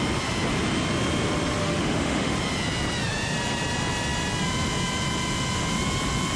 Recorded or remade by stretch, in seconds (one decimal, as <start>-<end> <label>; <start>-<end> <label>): 0.0-1.6 recorded; 1.6-2.3 remade; 2.3-6.4 recorded